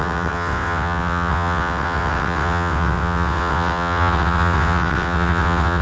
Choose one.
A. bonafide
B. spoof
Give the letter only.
B